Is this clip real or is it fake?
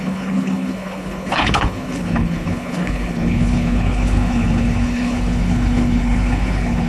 fake